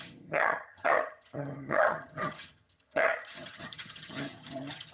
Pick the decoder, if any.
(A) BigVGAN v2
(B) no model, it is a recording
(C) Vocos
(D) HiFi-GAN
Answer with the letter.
D